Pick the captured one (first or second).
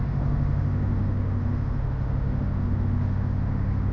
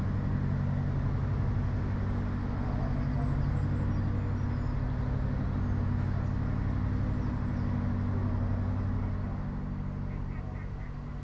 second